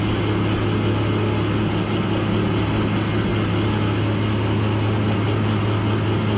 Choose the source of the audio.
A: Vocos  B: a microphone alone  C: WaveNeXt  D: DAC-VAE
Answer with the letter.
B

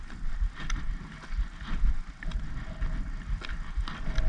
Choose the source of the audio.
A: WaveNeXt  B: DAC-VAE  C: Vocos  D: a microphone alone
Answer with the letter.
D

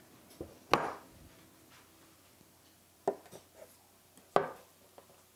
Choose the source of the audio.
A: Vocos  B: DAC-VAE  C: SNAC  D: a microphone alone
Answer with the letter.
D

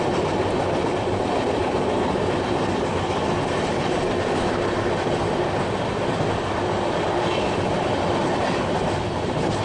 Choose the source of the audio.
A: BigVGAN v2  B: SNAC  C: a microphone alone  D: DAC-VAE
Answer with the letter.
C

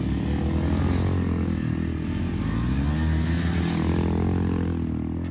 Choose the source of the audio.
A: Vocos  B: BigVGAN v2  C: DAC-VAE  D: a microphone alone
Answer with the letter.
D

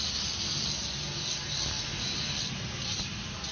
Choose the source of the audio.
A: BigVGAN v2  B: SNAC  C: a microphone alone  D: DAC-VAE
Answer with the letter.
C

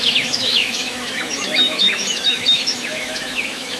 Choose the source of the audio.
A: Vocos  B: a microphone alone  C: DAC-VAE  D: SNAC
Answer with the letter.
C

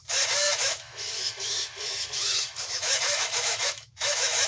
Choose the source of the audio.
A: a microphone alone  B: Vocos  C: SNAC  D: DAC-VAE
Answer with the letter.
D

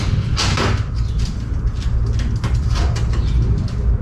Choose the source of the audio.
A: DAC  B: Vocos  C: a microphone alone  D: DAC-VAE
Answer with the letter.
C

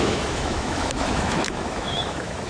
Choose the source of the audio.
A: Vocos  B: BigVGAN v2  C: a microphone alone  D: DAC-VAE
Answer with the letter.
D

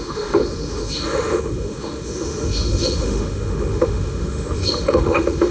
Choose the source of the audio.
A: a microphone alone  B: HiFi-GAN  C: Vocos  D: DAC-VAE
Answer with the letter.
D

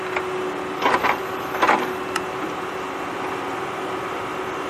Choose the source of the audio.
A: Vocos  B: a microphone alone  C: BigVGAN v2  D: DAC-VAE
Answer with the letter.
B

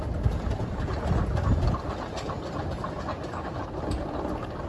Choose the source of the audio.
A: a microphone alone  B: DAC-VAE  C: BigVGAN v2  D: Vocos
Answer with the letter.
A